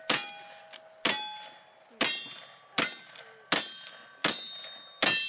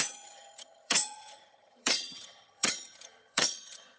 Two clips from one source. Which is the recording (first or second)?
first